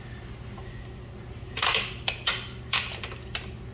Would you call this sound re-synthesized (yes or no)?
no